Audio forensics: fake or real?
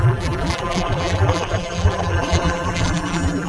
fake